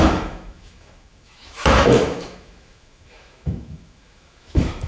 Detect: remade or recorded remade